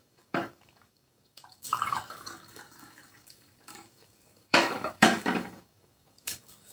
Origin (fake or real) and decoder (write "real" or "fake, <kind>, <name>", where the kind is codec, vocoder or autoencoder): fake, codec, DAC